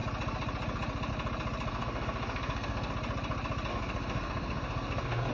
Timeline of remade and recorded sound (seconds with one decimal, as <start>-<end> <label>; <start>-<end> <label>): 0.0-1.7 recorded; 1.7-2.9 remade; 2.9-3.7 recorded; 3.7-5.3 remade